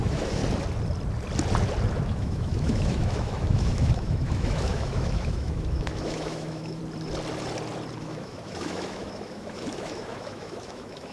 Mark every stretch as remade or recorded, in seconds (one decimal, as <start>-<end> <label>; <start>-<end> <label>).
0.0-0.4 remade; 0.4-1.9 recorded; 1.9-6.8 remade; 6.8-8.0 recorded; 8.0-11.1 remade